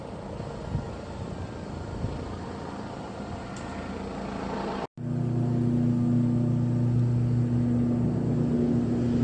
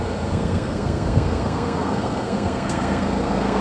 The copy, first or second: second